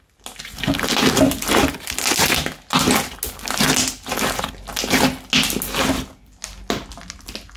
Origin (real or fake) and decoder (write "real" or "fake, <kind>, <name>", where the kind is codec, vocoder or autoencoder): real